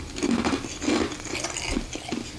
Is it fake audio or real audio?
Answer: real